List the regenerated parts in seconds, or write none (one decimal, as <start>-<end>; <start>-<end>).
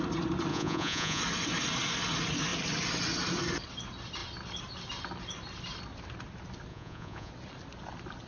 0.5-1.2; 6.7-7.3